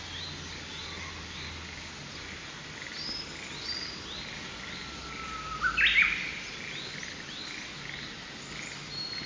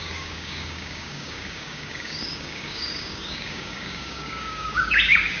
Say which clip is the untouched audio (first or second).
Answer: first